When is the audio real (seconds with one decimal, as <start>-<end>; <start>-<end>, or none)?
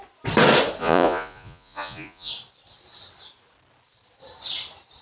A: 0.0-0.8; 2.3-5.0